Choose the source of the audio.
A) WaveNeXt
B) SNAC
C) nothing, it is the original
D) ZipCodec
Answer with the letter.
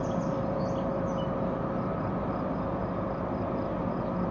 C